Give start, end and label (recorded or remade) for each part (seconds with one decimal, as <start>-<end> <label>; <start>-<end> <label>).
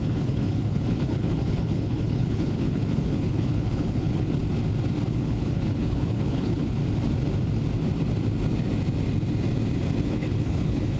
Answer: 0.0-4.4 remade; 4.4-5.1 recorded; 5.1-6.8 remade; 6.8-10.0 recorded; 10.0-11.0 remade